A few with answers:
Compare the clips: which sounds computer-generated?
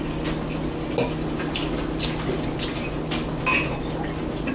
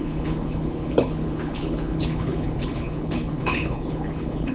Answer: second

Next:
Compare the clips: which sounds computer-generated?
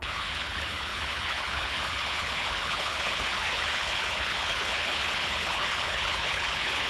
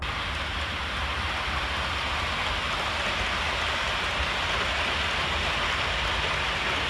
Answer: first